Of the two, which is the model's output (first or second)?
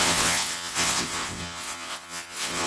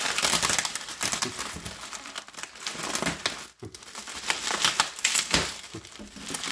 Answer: first